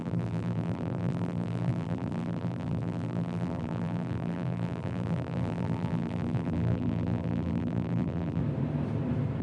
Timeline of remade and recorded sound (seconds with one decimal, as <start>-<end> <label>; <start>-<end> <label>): 0.0-8.4 remade; 8.4-9.4 recorded